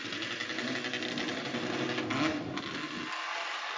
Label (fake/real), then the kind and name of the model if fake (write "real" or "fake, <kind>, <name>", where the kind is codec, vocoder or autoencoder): real